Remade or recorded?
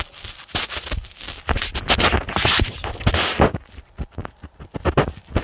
recorded